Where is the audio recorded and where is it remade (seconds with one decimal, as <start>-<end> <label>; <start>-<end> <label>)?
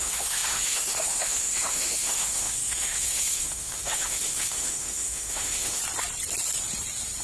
0.0-5.8 remade; 5.8-7.2 recorded